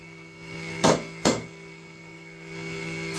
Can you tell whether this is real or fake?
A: fake